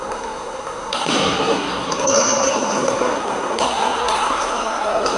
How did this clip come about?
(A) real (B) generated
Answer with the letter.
B